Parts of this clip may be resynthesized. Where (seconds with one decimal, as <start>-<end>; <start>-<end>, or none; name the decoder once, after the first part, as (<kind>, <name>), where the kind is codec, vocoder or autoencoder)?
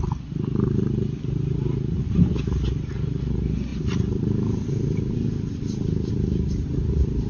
none